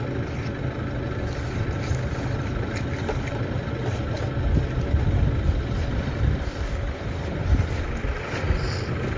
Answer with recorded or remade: recorded